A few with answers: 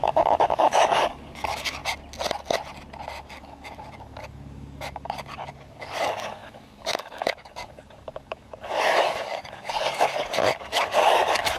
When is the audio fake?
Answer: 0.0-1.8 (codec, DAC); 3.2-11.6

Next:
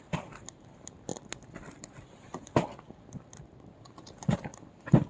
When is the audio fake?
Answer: none

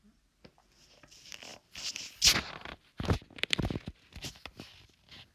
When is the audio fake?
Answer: none

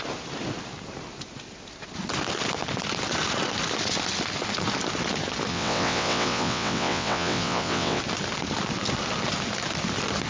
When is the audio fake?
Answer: 5.5-8.0 (vocoder, WaveNeXt)